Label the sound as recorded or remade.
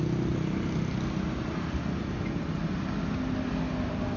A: recorded